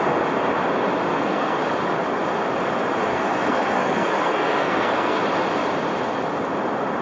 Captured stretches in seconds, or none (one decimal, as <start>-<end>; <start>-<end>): 0.0-1.1; 1.6-3.1; 5.2-7.0